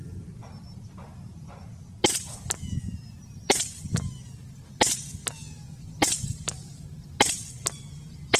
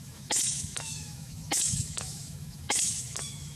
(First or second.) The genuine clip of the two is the first